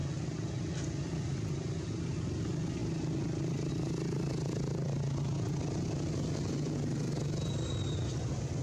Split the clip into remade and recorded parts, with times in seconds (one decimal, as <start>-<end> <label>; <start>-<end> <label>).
0.0-8.6 recorded